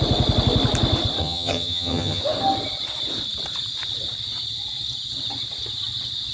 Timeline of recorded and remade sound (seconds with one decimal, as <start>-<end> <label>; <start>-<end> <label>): 0.0-1.2 recorded; 1.2-2.2 remade; 2.2-6.3 recorded